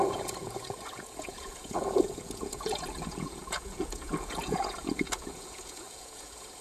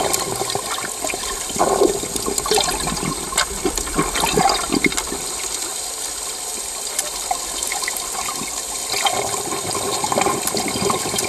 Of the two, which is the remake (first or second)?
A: first